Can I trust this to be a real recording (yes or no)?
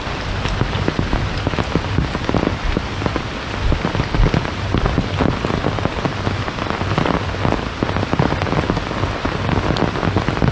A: yes